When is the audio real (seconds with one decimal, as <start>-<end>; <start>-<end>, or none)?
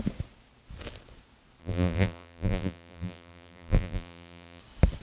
0.0-1.6; 4.6-5.0